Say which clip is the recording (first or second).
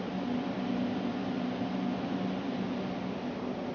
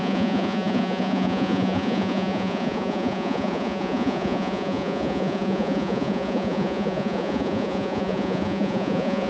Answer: first